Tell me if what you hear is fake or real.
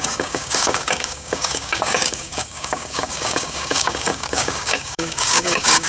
fake